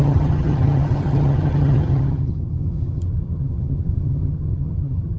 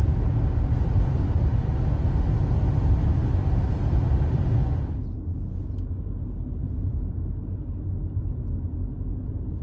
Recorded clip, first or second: second